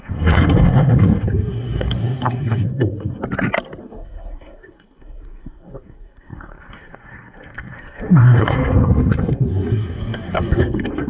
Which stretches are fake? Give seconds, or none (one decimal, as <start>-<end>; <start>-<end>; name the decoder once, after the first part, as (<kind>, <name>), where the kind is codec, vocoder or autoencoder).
0.0-3.2 (codec, SNAC); 3.8-11.1